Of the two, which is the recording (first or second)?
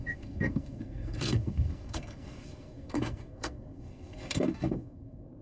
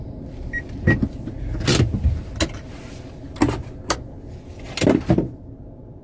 second